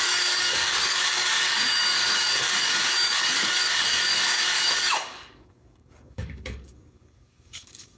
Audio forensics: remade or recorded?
remade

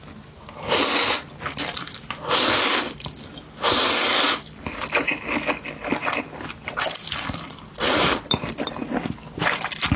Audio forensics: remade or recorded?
recorded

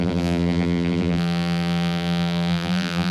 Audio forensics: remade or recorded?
remade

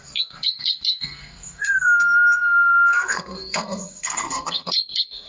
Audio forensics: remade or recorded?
remade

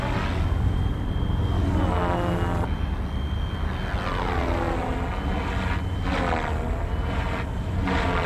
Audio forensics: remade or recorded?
recorded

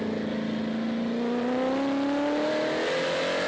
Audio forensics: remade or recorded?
recorded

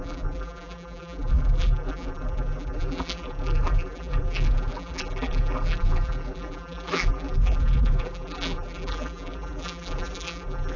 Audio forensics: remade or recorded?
remade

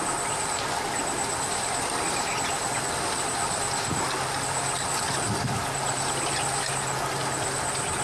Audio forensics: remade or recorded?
recorded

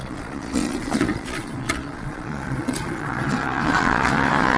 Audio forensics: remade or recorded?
remade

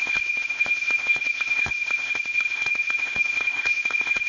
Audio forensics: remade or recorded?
remade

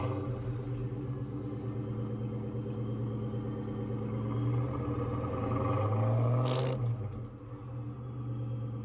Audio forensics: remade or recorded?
recorded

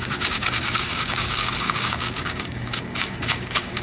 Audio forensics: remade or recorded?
remade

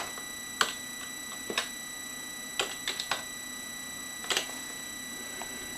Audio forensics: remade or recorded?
recorded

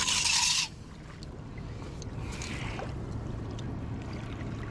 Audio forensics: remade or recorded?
recorded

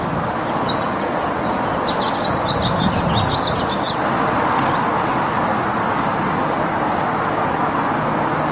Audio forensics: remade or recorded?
recorded